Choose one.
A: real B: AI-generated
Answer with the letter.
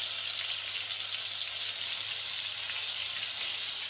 A